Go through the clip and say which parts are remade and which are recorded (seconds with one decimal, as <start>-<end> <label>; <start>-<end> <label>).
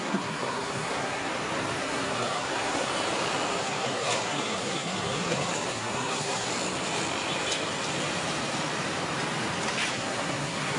0.0-1.3 remade; 1.3-1.8 recorded; 1.8-2.9 remade; 2.9-3.6 recorded; 3.6-6.5 remade; 6.5-9.9 recorded; 9.9-10.8 remade